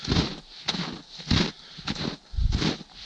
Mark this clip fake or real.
real